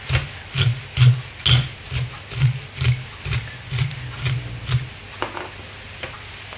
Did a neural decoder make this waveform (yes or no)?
no